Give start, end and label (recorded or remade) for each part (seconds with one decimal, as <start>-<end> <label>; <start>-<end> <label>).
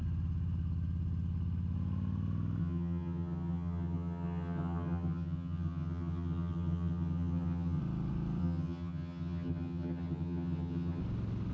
0.0-2.6 recorded; 2.6-7.8 remade; 7.8-8.4 recorded; 8.4-11.0 remade; 11.0-11.5 recorded